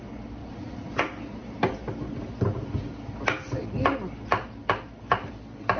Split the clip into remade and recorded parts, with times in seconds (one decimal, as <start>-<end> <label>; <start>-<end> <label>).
0.0-0.4 recorded; 0.4-0.9 remade; 0.9-5.8 recorded